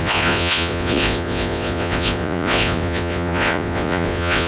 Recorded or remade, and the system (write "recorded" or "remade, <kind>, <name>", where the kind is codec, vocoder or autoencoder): remade, vocoder, Vocos